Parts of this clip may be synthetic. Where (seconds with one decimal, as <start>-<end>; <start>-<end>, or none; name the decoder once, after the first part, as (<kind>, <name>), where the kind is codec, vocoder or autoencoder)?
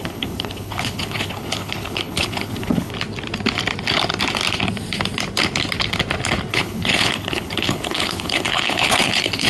0.0-2.9 (codec, HILCodec); 6.5-9.5